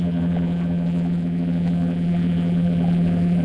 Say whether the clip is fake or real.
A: fake